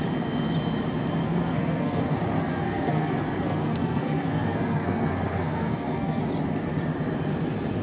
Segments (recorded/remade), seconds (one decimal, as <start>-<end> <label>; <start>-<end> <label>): 0.0-1.2 recorded; 1.2-2.0 remade; 2.0-2.4 recorded; 2.4-6.2 remade; 6.2-7.8 recorded